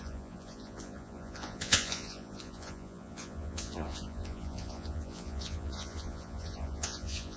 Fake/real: fake